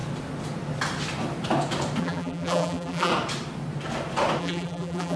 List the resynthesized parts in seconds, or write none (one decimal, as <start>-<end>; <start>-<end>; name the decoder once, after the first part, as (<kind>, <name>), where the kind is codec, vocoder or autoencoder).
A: 2.0-3.1 (vocoder, BigVGAN v2); 4.4-5.2